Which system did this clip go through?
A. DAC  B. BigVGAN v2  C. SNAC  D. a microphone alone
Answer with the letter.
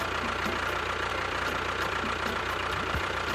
B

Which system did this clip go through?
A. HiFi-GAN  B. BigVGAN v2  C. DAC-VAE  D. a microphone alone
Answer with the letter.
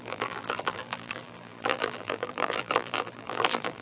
B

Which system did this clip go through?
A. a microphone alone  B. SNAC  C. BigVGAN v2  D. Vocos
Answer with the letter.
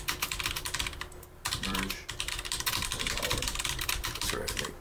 C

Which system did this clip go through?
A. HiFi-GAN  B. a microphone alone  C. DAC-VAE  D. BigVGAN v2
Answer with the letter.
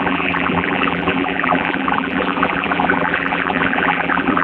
D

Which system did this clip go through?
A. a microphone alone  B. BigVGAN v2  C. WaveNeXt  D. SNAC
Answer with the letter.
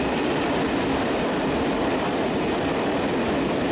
A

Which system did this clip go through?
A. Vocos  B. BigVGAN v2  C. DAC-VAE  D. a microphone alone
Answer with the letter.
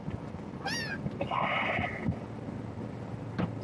D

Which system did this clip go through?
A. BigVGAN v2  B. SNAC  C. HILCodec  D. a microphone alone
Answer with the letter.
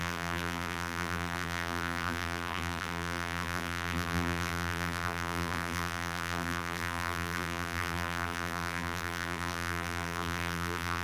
A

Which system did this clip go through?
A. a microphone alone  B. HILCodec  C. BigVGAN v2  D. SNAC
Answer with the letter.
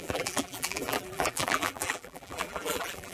C